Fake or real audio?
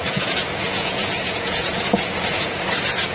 fake